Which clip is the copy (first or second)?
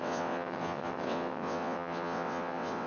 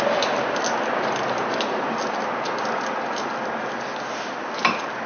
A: first